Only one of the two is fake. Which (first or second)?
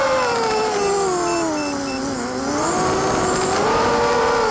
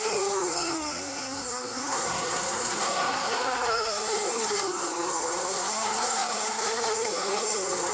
second